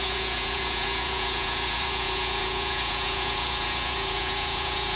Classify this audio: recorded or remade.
remade